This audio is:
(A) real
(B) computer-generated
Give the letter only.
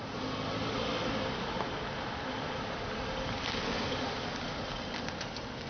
A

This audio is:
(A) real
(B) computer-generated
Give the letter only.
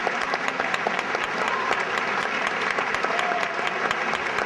B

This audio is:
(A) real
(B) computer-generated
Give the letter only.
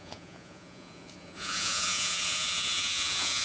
B